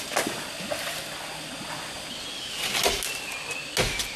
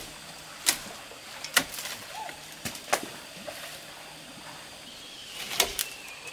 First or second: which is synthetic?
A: second